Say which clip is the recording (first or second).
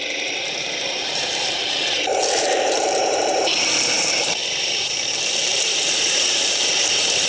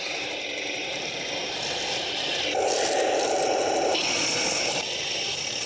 second